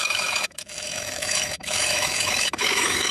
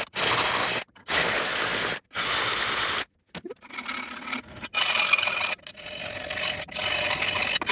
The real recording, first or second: second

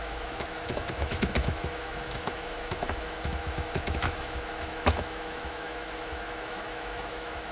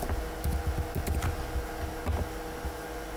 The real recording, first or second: second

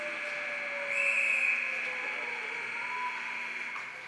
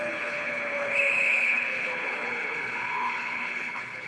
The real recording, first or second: first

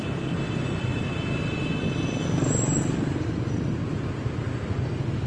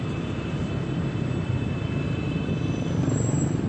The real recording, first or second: first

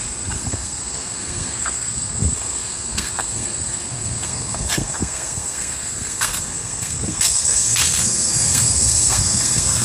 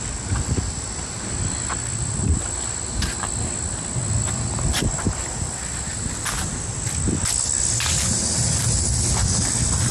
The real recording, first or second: second